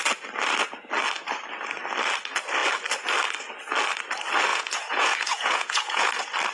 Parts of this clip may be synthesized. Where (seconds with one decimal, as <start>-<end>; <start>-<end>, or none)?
4.5-6.1